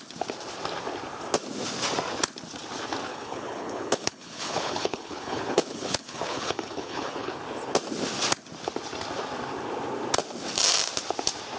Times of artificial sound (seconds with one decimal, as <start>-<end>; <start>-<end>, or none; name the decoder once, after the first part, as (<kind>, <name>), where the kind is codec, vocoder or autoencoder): 3.1-7.4 (codec, HILCodec)